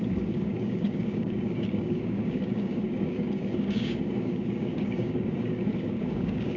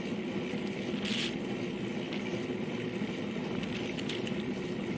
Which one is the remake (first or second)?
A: first